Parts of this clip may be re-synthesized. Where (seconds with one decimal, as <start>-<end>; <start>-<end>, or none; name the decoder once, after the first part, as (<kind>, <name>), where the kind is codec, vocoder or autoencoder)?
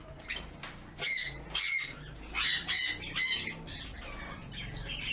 0.0-1.2 (vocoder, BigVGAN v2); 4.3-5.1